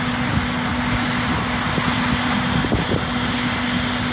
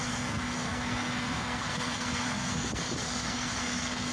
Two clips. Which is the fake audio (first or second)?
second